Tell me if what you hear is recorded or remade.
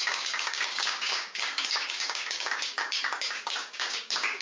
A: remade